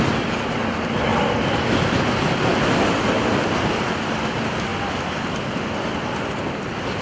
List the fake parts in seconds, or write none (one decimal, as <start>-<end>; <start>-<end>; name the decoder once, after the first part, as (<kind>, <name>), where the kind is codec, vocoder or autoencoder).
1.1-1.7 (vocoder, BigVGAN v2); 4.7-5.7